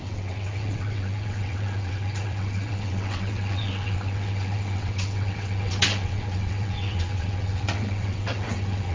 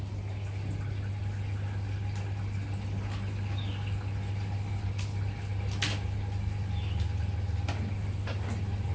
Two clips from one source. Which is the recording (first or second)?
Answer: second